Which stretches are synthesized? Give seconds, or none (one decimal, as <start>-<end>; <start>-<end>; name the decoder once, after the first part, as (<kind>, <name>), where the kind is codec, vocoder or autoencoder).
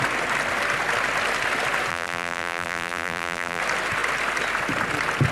1.9-3.6 (vocoder, BigVGAN v2)